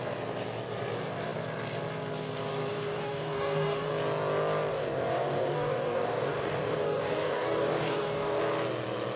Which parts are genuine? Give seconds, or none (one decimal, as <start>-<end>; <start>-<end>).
0.0-2.7; 3.9-4.7; 8.4-9.2